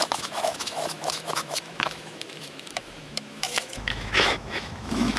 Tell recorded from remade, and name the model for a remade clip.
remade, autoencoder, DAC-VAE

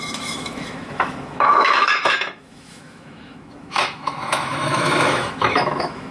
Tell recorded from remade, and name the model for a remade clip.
remade, autoencoder, DAC-VAE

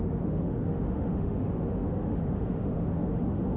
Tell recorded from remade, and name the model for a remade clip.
remade, autoencoder, DAC-VAE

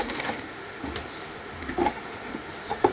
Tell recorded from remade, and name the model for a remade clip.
remade, autoencoder, DAC-VAE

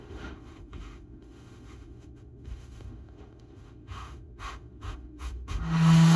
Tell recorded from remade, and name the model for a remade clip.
remade, autoencoder, DAC-VAE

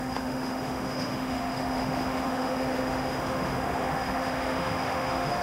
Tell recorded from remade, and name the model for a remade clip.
remade, autoencoder, DAC-VAE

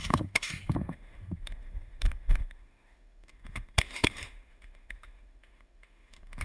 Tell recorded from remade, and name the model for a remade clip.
remade, autoencoder, DAC-VAE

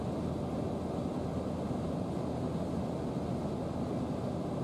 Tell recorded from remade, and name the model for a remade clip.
recorded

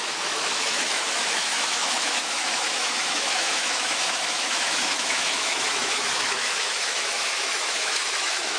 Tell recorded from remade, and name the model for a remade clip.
remade, autoencoder, DAC-VAE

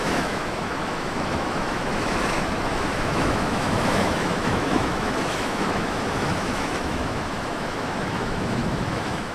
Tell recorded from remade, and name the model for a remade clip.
remade, autoencoder, DAC-VAE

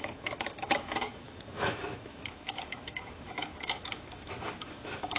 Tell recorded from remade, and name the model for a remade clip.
remade, autoencoder, DAC-VAE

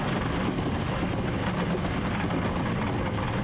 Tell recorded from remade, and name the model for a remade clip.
recorded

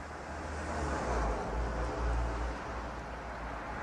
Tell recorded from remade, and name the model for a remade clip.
recorded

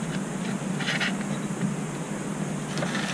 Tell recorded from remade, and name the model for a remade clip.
recorded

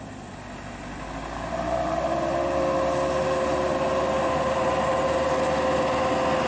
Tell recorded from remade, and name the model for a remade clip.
recorded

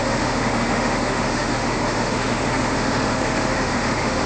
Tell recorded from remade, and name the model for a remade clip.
remade, autoencoder, DAC-VAE